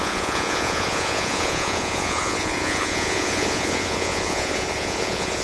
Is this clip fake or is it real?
fake